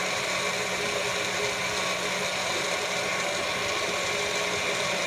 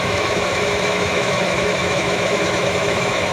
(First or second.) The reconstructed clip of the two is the second